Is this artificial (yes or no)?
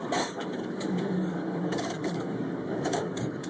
yes